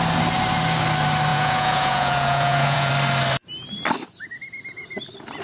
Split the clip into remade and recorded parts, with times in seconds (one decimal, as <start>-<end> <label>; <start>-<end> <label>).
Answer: 0.0-1.3 recorded; 1.3-2.9 remade; 2.9-5.4 recorded